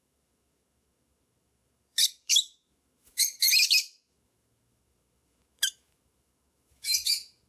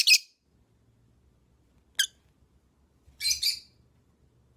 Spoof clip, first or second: first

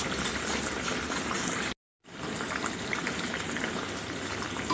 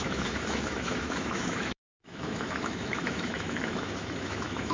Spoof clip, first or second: second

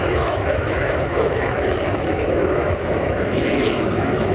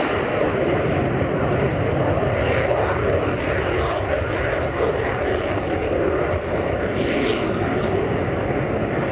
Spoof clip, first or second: first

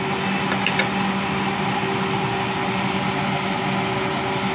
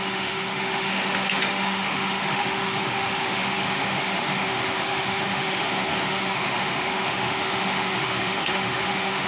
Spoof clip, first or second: second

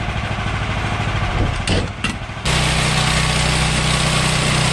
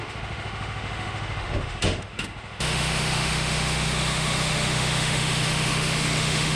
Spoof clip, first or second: second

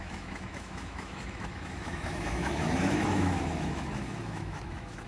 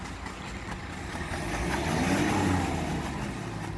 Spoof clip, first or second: first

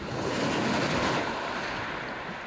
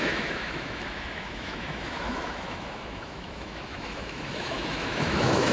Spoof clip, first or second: second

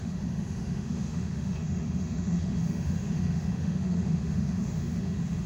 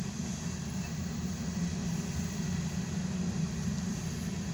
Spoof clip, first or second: first